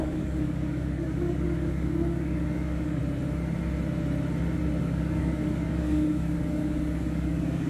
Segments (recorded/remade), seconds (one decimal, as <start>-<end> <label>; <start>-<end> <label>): 0.0-3.0 remade; 3.0-4.8 recorded; 4.8-7.7 remade